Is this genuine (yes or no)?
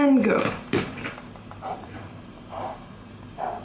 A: no